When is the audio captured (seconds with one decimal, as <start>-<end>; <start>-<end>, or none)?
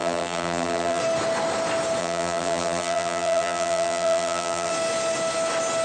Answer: 1.0-2.0; 4.7-5.8